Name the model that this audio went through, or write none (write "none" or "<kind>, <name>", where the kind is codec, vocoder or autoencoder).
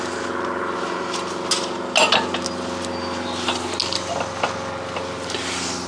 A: none